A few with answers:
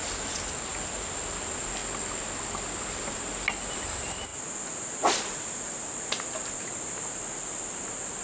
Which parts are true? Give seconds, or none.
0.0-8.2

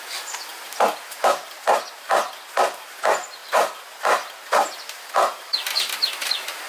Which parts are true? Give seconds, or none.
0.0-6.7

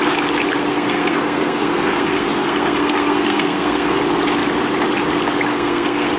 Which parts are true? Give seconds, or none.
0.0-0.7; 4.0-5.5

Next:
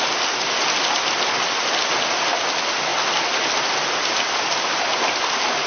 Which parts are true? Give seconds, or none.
0.0-5.7

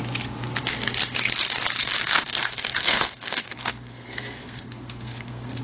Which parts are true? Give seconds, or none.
0.0-1.8

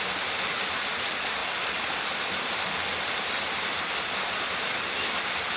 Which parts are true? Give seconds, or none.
0.0-5.6

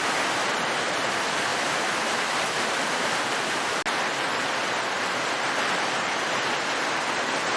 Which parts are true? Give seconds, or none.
0.0-7.6

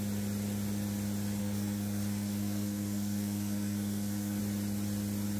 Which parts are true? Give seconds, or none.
0.0-1.4; 4.4-5.4